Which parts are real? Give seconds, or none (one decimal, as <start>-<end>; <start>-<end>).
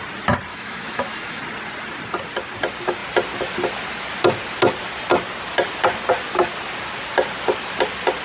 0.0-0.5; 1.4-8.2